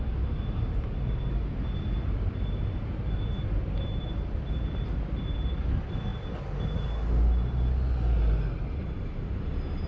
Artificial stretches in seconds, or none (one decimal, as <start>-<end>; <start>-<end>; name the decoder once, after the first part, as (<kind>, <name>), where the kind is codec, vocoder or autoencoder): none